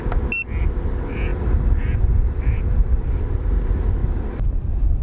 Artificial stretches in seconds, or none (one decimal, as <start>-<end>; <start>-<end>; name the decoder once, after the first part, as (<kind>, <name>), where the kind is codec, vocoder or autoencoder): 1.3-3.2 (vocoder, BigVGAN v2); 4.0-5.0